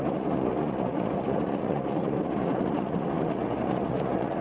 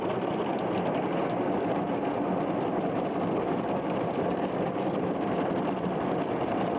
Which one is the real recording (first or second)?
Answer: second